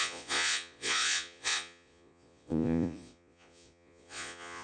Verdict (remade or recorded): remade